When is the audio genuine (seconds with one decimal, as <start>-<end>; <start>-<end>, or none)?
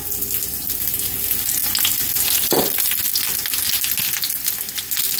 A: 0.0-5.2